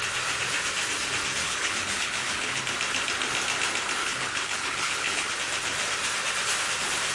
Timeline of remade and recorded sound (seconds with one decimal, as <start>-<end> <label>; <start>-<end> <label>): 0.0-1.4 recorded; 1.4-2.6 remade; 2.6-4.0 recorded; 4.0-5.3 remade; 5.3-7.1 recorded